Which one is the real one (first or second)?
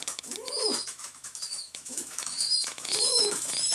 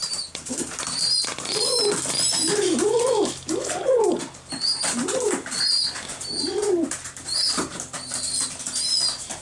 second